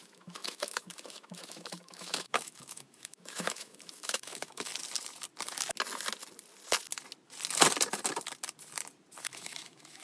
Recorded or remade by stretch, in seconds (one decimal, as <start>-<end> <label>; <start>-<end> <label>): 0.0-4.7 remade; 4.7-9.2 recorded; 9.2-10.0 remade